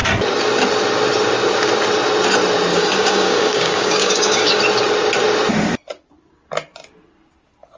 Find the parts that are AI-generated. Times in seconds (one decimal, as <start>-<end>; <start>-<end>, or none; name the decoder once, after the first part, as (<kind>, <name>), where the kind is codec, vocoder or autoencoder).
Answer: 2.7-4.6 (codec, DAC)